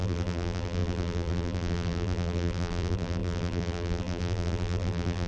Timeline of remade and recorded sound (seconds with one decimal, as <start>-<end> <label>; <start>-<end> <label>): 0.0-5.3 remade